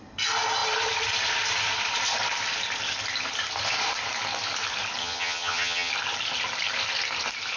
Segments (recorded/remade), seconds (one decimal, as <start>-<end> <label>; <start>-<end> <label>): 0.0-5.0 recorded; 5.0-5.9 remade; 5.9-7.6 recorded